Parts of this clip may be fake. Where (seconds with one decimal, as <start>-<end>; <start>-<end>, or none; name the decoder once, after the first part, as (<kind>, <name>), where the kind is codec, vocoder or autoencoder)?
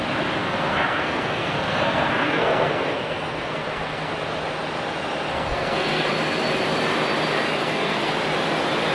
0.4-4.1 (codec, SNAC); 5.3-6.1; 7.6-8.1